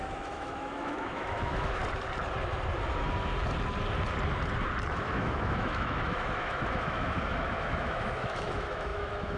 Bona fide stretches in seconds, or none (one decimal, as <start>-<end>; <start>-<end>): 1.8-4.9